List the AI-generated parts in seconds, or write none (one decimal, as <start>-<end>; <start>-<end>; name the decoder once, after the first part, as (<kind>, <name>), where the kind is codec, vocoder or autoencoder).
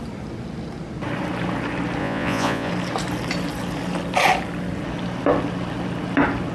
2.0-2.7 (vocoder, Vocos)